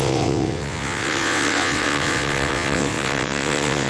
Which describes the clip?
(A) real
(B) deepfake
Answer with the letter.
B